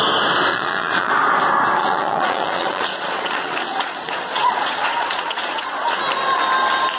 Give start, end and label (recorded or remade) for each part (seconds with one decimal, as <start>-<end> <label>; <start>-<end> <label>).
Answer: 0.0-0.5 recorded; 0.5-1.1 remade; 1.1-1.8 recorded; 1.8-6.0 remade; 6.0-7.0 recorded